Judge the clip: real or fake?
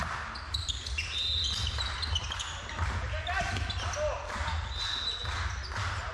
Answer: real